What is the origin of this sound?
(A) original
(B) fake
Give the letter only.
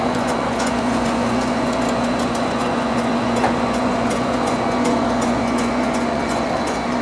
B